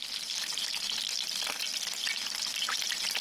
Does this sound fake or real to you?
real